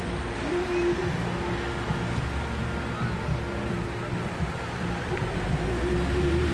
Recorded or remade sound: recorded